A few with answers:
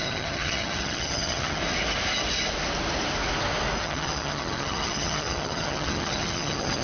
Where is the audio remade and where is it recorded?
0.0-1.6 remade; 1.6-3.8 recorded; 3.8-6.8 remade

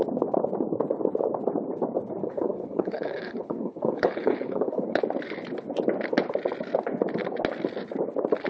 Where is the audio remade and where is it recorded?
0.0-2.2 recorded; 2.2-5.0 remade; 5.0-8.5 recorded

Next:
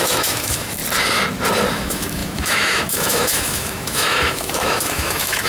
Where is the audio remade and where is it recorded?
0.0-0.8 remade; 0.8-1.7 recorded; 1.7-5.5 remade

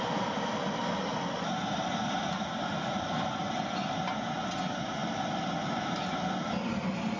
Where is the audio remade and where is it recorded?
0.0-7.2 recorded